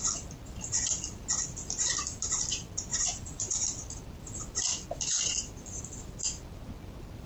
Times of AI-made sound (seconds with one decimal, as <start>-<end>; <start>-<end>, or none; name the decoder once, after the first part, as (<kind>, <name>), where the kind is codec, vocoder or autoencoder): none